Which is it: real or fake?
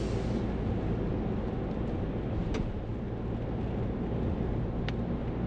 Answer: real